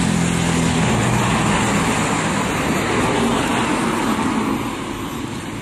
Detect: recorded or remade recorded